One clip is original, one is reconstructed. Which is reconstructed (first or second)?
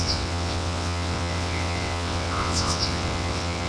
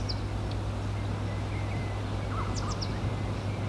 first